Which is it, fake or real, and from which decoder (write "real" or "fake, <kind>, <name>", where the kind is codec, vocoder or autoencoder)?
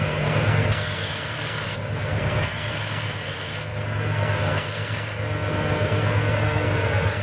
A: fake, codec, SNAC